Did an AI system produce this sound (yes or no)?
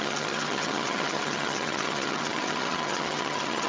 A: yes